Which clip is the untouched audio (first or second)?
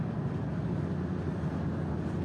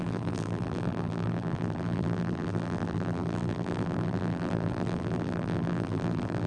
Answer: first